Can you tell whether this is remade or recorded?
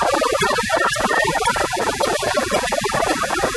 recorded